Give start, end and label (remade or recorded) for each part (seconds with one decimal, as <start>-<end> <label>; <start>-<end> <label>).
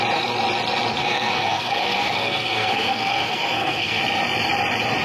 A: 0.0-1.0 recorded; 1.0-4.0 remade; 4.0-5.0 recorded